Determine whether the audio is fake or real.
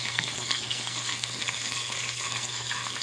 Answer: fake